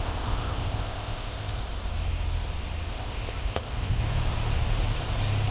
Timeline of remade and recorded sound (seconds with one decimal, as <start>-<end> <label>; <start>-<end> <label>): 0.0-1.6 remade; 1.6-2.9 recorded; 2.9-4.0 remade; 4.0-5.5 recorded